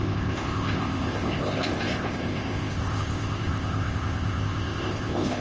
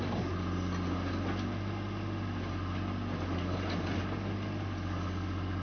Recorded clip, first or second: second